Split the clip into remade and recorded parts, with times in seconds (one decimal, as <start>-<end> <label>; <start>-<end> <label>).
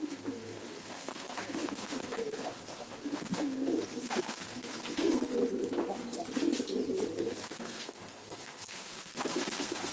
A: 0.0-5.4 remade; 5.4-7.2 recorded; 7.2-9.9 remade